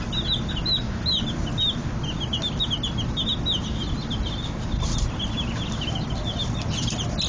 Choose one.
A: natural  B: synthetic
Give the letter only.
A